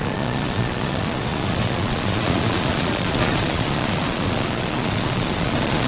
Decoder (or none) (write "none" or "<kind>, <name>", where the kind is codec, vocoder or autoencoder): vocoder, Vocos